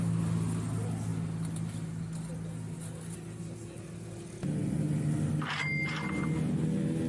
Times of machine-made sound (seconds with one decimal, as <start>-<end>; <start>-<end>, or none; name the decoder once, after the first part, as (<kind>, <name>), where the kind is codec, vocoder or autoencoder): none